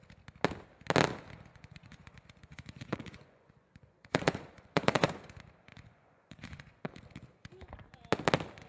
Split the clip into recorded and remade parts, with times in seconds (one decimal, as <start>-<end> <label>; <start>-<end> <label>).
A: 0.0-1.5 recorded; 1.5-5.2 remade; 5.2-5.7 recorded; 5.7-6.9 remade; 6.9-8.7 recorded